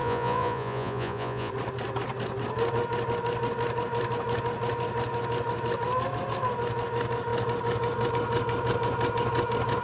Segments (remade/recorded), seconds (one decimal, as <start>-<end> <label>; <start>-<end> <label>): 0.0-1.5 remade; 1.5-9.8 recorded